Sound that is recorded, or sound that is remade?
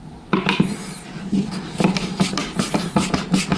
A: recorded